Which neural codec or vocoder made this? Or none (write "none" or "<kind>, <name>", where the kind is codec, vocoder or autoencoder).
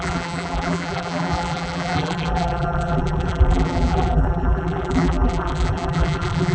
vocoder, BigVGAN v2